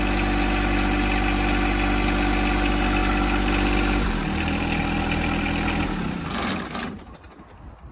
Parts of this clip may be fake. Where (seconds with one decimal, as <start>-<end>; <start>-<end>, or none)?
3.0-4.8